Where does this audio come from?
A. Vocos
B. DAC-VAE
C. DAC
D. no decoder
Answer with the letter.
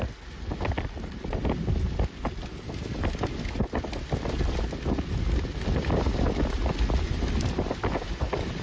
D